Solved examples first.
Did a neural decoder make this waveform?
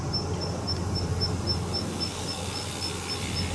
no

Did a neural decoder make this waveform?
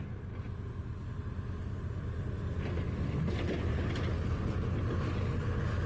no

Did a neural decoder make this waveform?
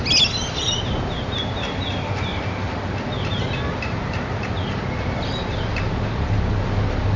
no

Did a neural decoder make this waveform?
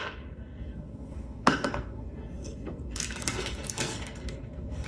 yes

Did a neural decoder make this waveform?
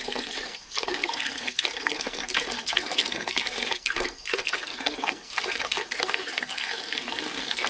yes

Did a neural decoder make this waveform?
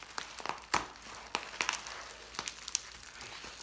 no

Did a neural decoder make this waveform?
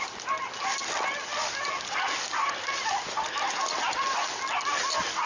no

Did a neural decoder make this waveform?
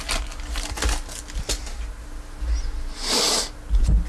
no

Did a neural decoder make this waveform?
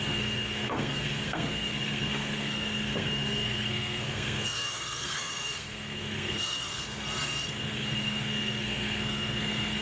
yes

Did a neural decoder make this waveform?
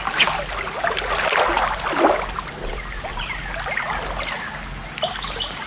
no